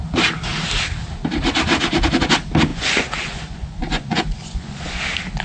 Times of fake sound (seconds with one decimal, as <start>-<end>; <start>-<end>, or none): 2.7-5.0